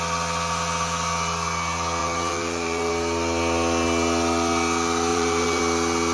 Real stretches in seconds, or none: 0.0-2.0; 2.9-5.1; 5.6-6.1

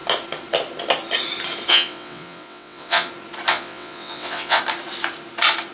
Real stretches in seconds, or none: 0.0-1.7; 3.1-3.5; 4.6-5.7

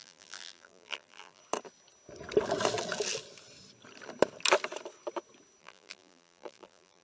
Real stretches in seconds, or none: 1.4-5.6

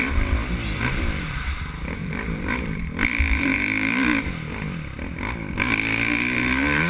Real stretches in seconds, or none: 0.0-2.0; 2.8-6.9

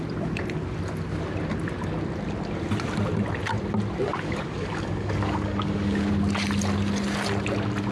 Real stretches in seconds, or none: 0.0-4.0; 6.1-7.9

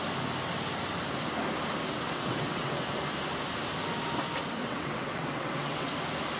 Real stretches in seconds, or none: 0.0-1.8; 2.9-4.6; 5.9-6.4